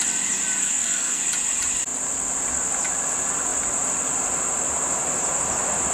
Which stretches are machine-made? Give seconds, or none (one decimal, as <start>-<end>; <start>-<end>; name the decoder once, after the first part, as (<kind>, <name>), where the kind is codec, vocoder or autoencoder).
0.6-1.2 (codec, SNAC)